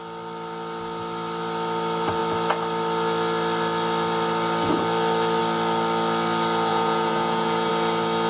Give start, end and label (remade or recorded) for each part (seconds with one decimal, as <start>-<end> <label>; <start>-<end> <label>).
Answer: 0.0-6.7 recorded; 6.7-7.7 remade; 7.7-8.3 recorded